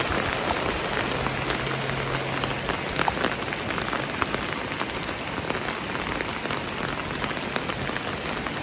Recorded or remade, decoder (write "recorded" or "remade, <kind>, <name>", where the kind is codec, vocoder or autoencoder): recorded